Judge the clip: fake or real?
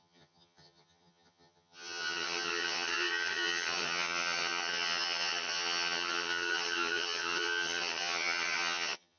fake